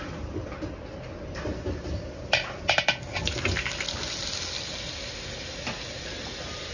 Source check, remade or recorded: recorded